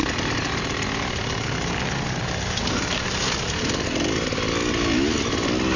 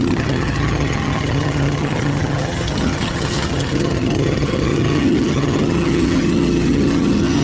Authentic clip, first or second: first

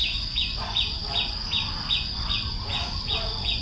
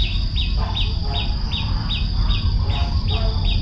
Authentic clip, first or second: second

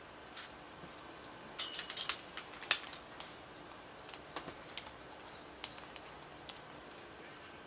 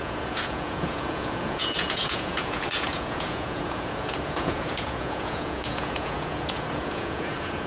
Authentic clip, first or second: first